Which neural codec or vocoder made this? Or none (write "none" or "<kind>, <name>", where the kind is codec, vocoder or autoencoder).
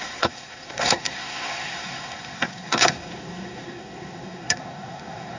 codec, SNAC